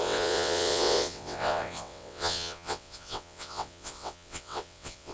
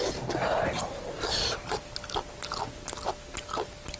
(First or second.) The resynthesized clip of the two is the first